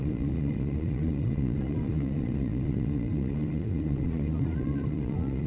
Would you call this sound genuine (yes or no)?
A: no